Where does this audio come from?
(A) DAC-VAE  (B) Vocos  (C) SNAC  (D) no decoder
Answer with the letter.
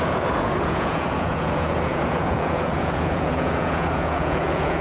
B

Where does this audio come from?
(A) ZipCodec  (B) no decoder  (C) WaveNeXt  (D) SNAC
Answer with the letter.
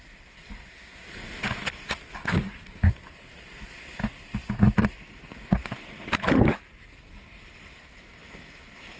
B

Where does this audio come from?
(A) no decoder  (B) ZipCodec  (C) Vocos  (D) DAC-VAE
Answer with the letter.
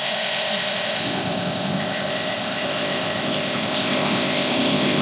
B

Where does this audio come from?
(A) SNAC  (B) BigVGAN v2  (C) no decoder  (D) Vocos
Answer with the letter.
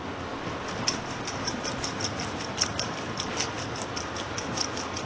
C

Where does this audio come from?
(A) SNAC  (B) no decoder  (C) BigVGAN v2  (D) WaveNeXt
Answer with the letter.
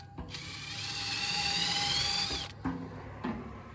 C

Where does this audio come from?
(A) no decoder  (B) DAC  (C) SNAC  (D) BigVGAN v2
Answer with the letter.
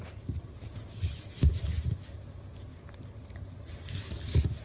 D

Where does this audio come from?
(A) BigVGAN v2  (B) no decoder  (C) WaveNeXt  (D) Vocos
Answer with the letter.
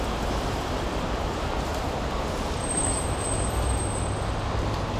A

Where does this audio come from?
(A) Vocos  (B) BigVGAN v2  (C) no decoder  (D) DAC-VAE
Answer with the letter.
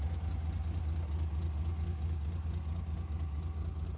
C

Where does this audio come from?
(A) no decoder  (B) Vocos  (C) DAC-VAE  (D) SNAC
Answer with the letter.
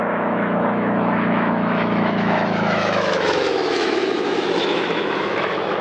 C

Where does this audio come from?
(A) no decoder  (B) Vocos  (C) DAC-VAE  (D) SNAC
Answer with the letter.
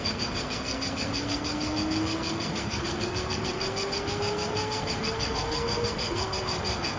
D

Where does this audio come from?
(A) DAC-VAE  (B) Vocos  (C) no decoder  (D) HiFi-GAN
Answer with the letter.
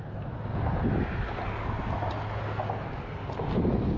C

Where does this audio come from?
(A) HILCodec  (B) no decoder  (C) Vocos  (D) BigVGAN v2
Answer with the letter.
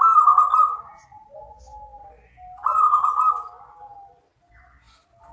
B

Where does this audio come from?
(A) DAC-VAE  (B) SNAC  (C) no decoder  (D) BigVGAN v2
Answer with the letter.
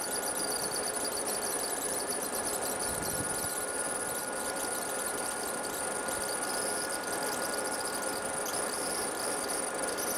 C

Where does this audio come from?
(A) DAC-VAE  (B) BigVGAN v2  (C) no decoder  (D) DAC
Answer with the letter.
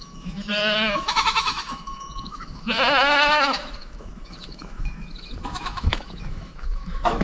A